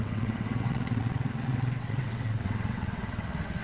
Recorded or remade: remade